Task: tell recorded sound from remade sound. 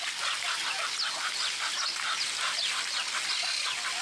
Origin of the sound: recorded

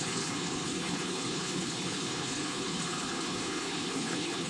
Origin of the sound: remade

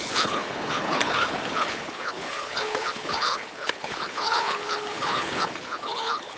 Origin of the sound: remade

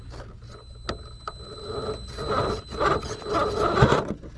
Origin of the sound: recorded